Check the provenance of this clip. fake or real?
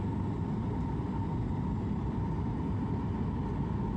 real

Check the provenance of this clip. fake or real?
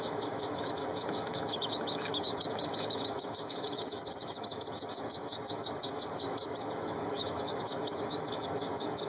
fake